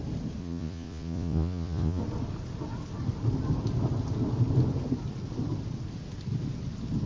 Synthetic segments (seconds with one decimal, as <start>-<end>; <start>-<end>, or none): 0.4-2.0